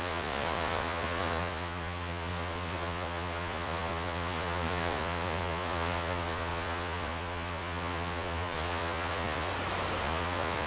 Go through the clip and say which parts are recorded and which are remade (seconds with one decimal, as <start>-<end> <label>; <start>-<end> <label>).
0.0-9.5 remade; 9.5-10.0 recorded; 10.0-10.7 remade